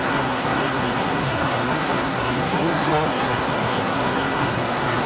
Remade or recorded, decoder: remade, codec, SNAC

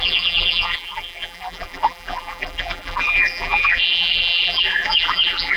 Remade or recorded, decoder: remade, vocoder, BigVGAN v2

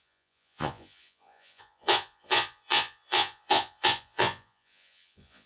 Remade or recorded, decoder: remade, vocoder, Vocos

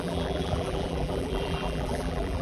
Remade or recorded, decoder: remade, vocoder, BigVGAN v2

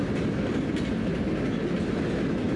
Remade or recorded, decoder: recorded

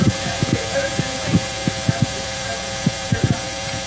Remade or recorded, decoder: remade, vocoder, Vocos